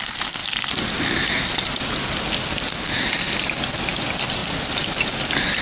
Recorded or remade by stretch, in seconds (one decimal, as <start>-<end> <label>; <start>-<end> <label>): 0.0-5.6 recorded